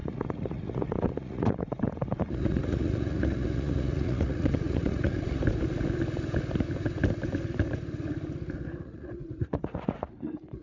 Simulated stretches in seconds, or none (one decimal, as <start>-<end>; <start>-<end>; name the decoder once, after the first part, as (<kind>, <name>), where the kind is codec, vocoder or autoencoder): 0.0-5.4 (vocoder, Vocos); 8.8-10.6